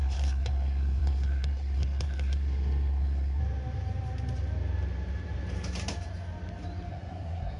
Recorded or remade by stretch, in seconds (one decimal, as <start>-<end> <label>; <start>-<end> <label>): 0.0-3.4 remade; 3.4-6.9 recorded; 6.9-7.6 remade